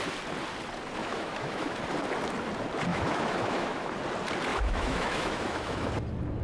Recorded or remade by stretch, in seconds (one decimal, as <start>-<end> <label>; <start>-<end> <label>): 0.0-1.0 recorded; 1.0-1.8 remade; 1.8-2.9 recorded; 2.9-3.9 remade; 3.9-4.5 recorded; 4.5-5.9 remade; 5.9-6.4 recorded